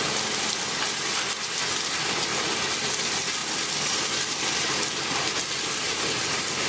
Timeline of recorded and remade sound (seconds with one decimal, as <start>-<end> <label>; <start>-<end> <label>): 0.0-6.7 recorded